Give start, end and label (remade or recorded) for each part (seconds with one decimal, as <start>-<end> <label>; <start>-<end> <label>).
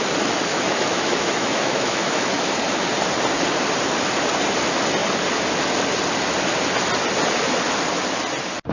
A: 0.0-0.5 recorded; 0.5-2.5 remade; 2.5-8.7 recorded